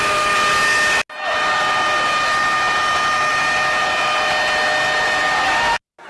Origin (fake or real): real